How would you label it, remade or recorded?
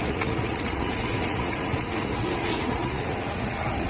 remade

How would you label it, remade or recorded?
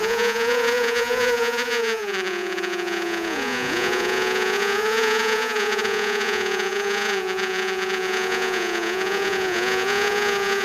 remade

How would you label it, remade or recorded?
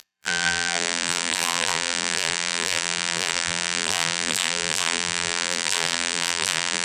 remade